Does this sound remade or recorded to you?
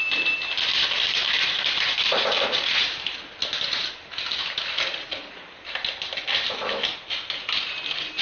recorded